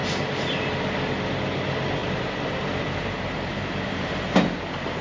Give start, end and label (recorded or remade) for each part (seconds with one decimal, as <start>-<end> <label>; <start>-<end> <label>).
0.0-0.7 recorded; 0.7-5.0 remade